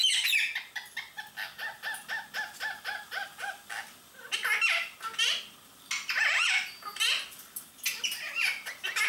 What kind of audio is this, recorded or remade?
recorded